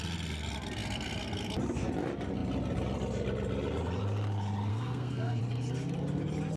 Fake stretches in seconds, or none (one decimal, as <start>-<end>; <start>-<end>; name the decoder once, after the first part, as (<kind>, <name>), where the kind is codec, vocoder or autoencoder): 4.7-5.4 (codec, SNAC)